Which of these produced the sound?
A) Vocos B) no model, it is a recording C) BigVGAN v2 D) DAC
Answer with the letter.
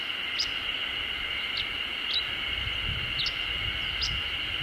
B